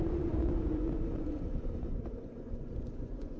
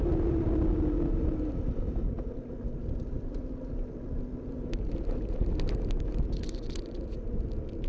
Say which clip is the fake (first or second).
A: first